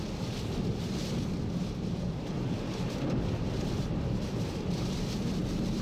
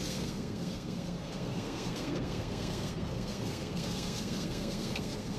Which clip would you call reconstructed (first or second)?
second